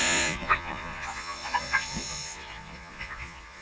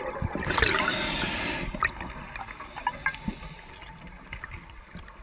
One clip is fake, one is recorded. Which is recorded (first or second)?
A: second